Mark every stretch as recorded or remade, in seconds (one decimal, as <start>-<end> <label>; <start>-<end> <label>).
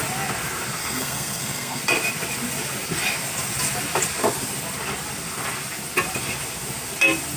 0.0-0.8 recorded; 0.8-1.8 remade; 1.8-7.4 recorded